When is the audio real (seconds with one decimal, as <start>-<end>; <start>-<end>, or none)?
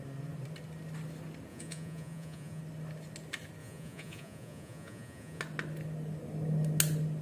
0.0-1.5; 2.6-3.6; 5.4-7.2